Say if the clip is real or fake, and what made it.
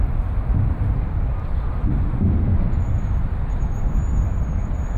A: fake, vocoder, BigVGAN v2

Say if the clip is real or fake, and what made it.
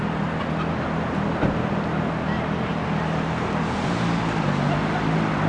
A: real